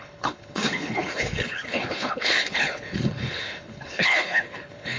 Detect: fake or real fake